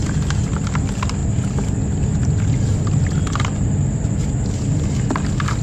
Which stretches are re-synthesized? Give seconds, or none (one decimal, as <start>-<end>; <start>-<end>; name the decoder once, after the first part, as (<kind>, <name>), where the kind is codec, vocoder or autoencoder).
none